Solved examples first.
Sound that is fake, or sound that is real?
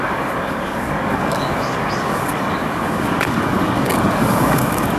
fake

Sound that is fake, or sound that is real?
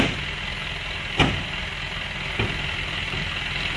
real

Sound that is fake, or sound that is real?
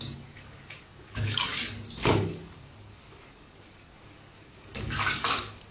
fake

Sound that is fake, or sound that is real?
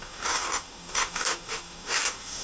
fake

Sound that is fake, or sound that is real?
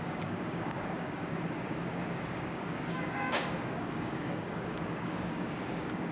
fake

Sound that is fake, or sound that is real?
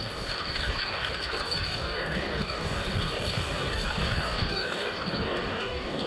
fake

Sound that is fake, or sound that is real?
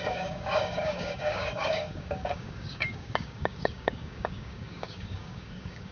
fake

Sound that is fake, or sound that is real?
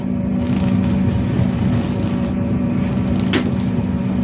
real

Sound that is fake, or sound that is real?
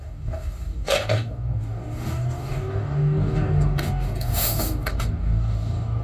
fake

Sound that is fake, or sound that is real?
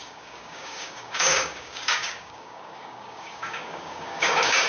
fake